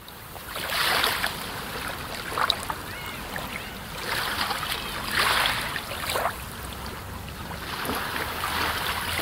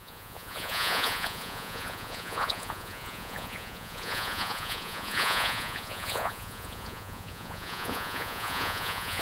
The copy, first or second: second